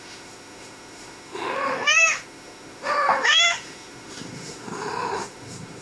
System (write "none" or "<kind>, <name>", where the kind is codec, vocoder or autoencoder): autoencoder, DAC-VAE